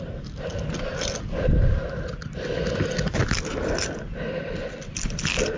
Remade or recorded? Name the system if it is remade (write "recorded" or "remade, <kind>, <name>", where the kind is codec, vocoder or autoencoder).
recorded